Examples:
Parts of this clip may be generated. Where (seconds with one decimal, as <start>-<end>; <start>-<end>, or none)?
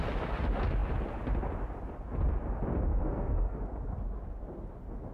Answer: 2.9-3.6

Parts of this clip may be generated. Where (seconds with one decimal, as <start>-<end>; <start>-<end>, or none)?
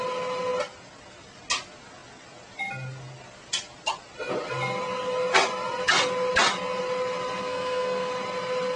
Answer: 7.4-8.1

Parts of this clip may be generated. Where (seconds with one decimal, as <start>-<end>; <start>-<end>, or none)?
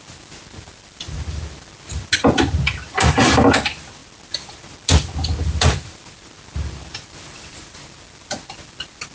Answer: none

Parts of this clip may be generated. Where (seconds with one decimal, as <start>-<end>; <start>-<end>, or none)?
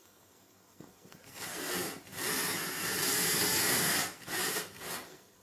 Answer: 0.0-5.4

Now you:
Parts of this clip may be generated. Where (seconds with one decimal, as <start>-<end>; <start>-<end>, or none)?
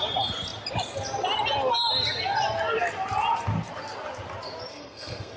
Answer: 4.7-5.4